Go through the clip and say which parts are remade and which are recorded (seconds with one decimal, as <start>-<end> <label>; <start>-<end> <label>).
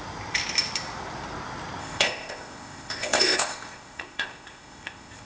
0.0-1.8 recorded; 1.8-5.3 remade